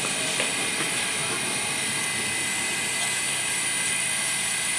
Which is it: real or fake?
real